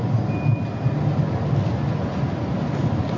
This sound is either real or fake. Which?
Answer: real